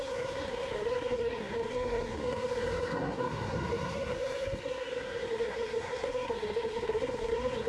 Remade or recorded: remade